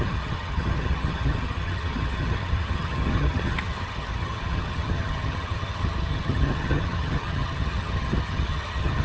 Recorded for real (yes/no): no